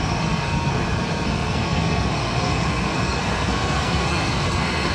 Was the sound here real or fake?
fake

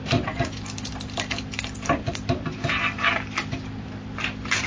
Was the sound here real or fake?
real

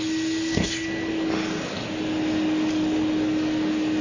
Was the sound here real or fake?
real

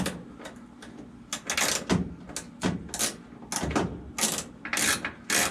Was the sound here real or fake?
real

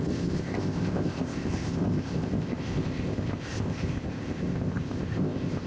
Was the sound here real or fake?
fake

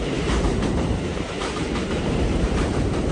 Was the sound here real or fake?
fake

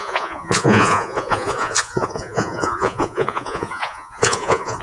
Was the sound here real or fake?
fake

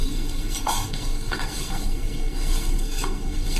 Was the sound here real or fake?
fake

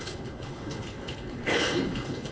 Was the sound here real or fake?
fake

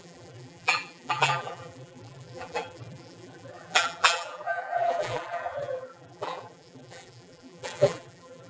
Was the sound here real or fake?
fake